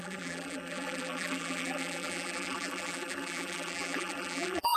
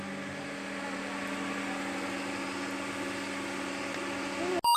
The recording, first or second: second